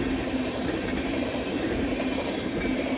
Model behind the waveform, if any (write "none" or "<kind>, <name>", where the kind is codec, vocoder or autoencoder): vocoder, BigVGAN v2